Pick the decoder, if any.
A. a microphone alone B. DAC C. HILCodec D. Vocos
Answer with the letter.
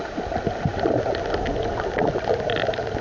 A